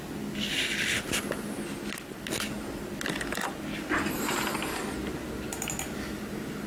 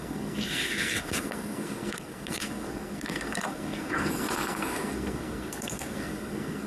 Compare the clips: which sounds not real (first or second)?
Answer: second